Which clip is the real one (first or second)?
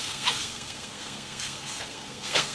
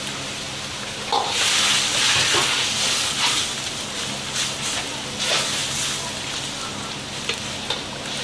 second